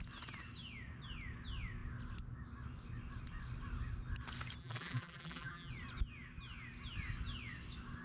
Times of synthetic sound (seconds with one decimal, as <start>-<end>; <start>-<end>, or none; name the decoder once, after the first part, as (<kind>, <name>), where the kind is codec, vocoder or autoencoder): 4.6-5.7 (vocoder, BigVGAN v2)